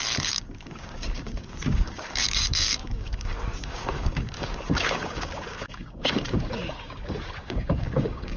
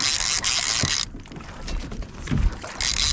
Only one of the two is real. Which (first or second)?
second